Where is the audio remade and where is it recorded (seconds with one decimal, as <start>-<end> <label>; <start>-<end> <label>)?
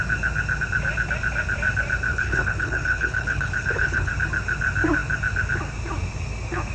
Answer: 0.0-2.1 recorded; 2.1-4.1 remade; 4.1-6.7 recorded